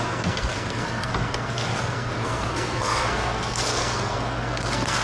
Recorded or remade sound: remade